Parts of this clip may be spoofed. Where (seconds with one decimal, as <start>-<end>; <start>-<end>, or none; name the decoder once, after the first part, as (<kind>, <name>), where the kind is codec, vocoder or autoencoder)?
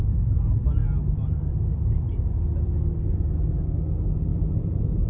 4.3-5.1 (vocoder, BigVGAN v2)